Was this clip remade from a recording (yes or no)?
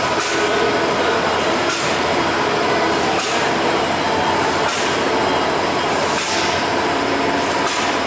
no